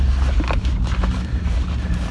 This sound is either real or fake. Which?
real